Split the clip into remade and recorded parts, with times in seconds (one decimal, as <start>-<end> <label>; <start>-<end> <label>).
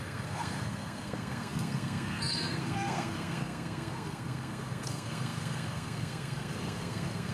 0.0-7.3 remade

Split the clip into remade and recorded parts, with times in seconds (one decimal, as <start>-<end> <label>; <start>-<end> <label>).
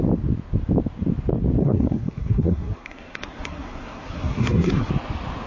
0.0-1.6 recorded; 1.6-4.9 remade; 4.9-5.5 recorded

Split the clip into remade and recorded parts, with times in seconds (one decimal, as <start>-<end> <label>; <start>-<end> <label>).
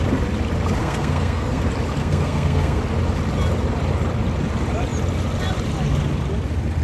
0.0-0.8 recorded; 0.8-1.6 remade; 1.6-2.0 recorded; 2.0-2.8 remade; 2.8-6.8 recorded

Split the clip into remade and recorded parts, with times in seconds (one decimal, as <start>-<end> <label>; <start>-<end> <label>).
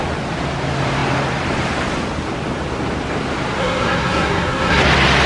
0.0-3.6 recorded; 3.6-4.8 remade; 4.8-5.3 recorded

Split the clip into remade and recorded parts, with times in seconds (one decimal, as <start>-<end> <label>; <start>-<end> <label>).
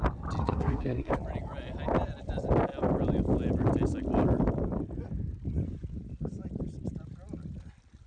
0.0-0.4 recorded; 0.4-1.1 remade; 1.1-8.1 recorded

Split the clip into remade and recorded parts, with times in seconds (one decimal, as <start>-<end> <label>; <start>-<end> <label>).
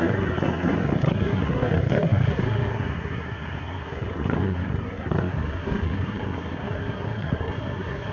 0.0-8.1 remade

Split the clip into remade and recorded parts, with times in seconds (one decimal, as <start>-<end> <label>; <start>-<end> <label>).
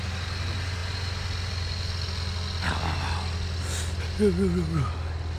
0.0-5.4 recorded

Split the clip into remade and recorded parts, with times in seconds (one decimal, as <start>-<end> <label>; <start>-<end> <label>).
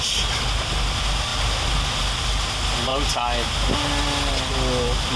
0.0-5.2 recorded